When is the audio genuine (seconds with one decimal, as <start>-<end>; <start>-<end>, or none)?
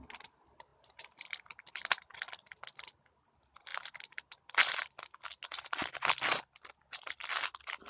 0.0-7.9